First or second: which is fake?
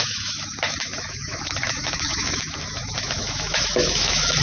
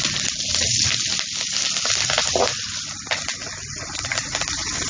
first